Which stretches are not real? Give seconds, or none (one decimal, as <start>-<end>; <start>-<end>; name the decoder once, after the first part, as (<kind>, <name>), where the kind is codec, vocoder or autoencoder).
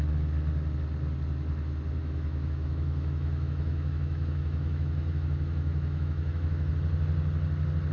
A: 2.0-6.7 (autoencoder, DAC-VAE)